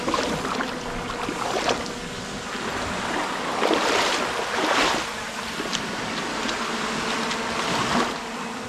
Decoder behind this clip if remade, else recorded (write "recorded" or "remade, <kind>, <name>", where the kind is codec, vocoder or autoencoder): recorded